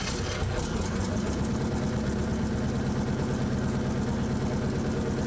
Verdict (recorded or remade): recorded